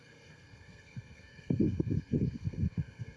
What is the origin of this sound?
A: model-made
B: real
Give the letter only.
A